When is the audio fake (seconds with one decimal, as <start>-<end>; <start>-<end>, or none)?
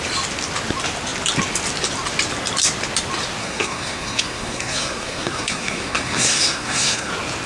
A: 3.4-7.1